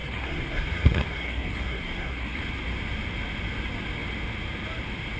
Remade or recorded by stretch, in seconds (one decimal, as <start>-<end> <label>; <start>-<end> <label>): 0.0-2.4 remade; 2.4-5.2 recorded